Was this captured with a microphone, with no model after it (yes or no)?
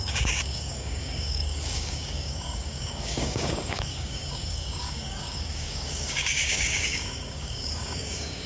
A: no